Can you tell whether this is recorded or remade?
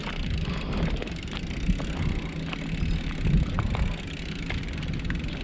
recorded